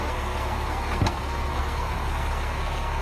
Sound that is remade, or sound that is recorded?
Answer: remade